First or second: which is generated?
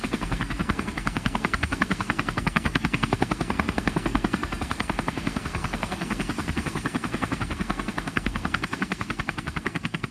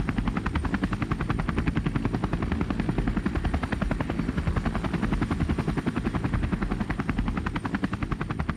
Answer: first